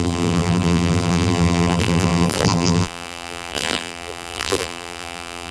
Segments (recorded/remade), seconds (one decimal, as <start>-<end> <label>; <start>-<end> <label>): 0.0-5.5 remade

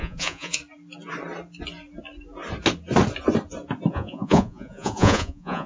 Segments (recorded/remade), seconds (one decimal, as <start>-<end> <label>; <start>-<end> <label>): 0.0-0.6 remade; 0.6-3.9 recorded; 3.9-5.7 remade

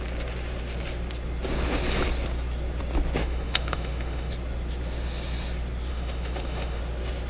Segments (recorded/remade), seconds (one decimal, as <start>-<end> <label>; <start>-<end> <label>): 0.0-3.2 recorded; 3.2-4.3 remade; 4.3-5.9 recorded; 5.9-6.8 remade; 6.8-7.3 recorded

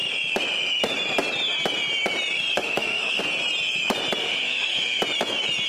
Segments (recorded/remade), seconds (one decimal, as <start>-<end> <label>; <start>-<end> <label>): 0.0-2.5 recorded; 2.5-3.2 remade; 3.2-4.2 recorded; 4.2-5.0 remade; 5.0-5.7 recorded